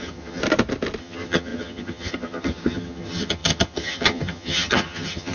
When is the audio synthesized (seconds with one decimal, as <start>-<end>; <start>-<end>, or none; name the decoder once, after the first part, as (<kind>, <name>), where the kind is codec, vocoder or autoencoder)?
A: 0.0-0.4 (vocoder, HiFi-GAN); 1.0-5.3